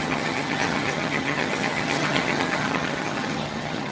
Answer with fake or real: fake